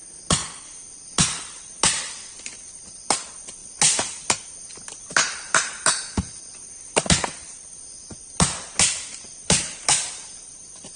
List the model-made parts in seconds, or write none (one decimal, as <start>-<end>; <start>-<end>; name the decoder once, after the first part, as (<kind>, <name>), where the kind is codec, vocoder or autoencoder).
none